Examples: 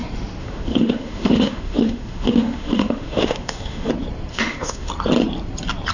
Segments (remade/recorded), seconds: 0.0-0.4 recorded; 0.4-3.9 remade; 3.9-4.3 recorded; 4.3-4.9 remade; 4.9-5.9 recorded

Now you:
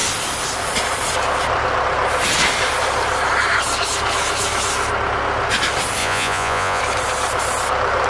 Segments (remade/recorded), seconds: 0.0-6.0 recorded; 6.0-6.8 remade; 6.8-8.1 recorded

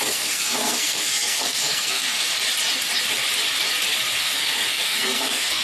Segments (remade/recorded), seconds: 0.0-2.3 remade; 2.3-4.2 recorded; 4.2-5.6 remade